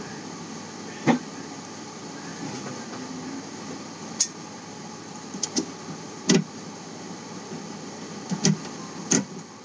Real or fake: real